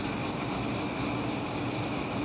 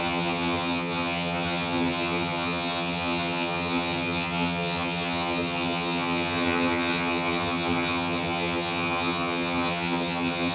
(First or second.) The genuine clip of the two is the first